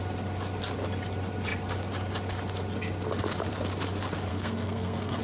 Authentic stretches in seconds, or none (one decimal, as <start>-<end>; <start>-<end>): 0.0-4.3